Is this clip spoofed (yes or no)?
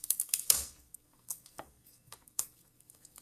yes